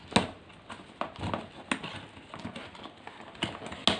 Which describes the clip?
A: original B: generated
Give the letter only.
A